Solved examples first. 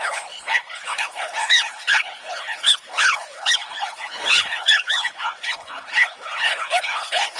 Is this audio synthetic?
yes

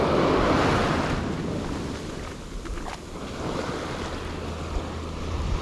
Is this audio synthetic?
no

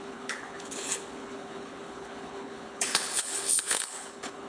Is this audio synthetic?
yes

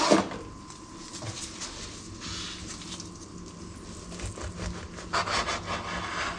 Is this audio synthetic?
no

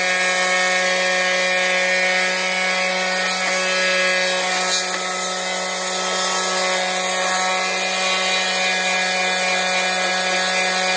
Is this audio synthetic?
no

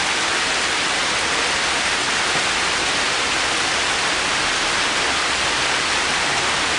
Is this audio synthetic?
no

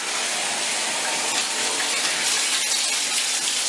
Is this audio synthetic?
no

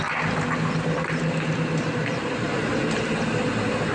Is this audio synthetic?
no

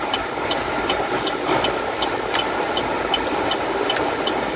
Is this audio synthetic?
no